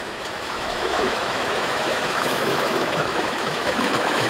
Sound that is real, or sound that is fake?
fake